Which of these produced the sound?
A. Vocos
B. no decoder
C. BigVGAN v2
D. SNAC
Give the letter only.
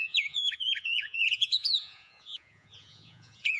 A